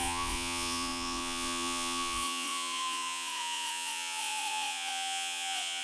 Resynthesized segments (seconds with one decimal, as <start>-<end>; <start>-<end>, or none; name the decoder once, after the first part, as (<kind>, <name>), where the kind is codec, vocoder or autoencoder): 0.0-5.8 (vocoder, Vocos)